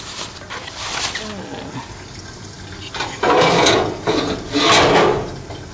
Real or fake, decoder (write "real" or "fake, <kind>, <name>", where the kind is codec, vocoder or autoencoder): real